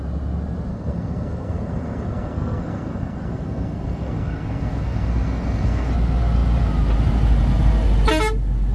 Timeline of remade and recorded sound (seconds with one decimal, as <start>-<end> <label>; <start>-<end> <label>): 0.0-0.7 recorded; 0.7-5.9 remade; 5.9-8.7 recorded